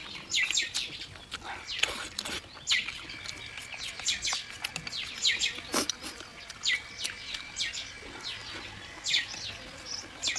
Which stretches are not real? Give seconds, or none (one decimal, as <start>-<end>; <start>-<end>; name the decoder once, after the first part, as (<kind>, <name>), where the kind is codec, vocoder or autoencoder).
none

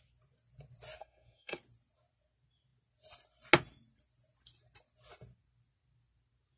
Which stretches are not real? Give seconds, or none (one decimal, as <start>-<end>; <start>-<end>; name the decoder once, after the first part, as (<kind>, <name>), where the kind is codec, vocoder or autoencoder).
1.0-1.6 (codec, SNAC)

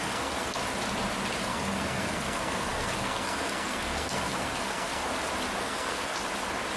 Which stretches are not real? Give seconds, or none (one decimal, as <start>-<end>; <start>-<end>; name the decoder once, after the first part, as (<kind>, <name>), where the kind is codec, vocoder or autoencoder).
0.0-0.6 (codec, SNAC); 1.4-5.0; 5.6-6.2

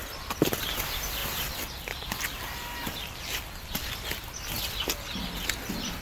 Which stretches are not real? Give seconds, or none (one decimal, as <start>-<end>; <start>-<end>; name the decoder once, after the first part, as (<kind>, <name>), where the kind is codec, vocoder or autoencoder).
none